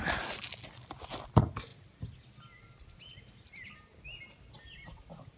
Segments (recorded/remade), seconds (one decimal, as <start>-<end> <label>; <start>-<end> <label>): 0.0-5.4 recorded